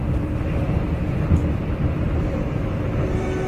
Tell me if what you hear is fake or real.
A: fake